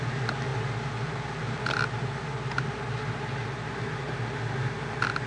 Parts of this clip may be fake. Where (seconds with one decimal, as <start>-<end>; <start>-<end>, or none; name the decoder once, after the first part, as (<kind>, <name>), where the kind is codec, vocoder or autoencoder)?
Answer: none